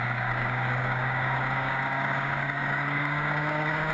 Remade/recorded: remade